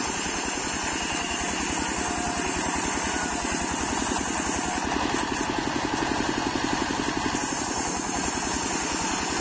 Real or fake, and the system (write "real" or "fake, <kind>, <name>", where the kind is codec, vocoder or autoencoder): real